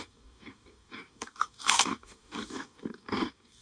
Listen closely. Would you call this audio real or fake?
fake